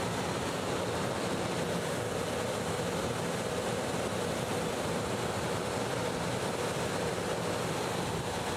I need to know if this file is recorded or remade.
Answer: recorded